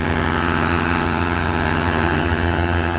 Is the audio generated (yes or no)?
yes